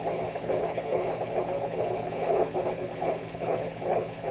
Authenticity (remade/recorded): remade